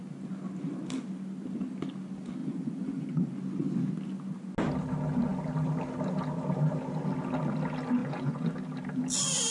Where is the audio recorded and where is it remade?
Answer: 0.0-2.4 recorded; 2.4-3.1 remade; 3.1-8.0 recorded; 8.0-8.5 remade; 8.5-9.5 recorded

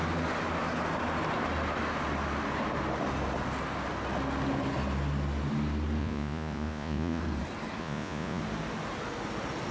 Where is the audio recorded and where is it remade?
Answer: 0.0-6.0 recorded; 6.0-7.2 remade; 7.2-7.8 recorded; 7.8-8.4 remade; 8.4-9.7 recorded

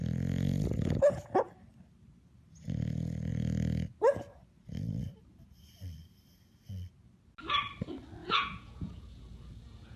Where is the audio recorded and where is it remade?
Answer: 0.0-8.2 recorded; 8.2-10.0 remade

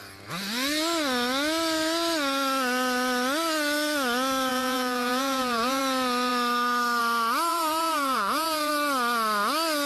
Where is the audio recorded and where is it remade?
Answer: 0.0-4.5 recorded; 4.5-5.8 remade; 5.8-7.5 recorded; 7.5-8.7 remade; 8.7-9.9 recorded

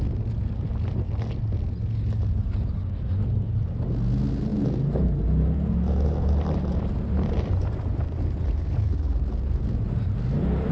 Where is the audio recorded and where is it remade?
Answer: 0.0-10.7 recorded

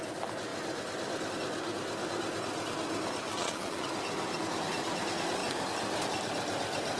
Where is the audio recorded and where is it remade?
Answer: 0.0-3.3 recorded; 3.3-3.9 remade; 3.9-7.0 recorded

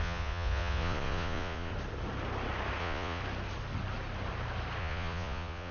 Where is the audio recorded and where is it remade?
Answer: 0.0-1.7 remade; 1.7-2.8 recorded; 2.8-3.2 remade; 3.2-4.8 recorded; 4.8-5.7 remade